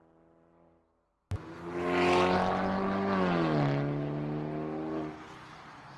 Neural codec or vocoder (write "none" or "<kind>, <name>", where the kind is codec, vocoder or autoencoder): none